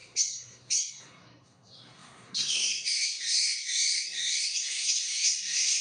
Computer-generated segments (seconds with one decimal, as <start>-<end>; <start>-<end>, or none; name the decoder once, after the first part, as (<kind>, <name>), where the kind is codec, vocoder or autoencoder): 0.0-5.8 (codec, SNAC)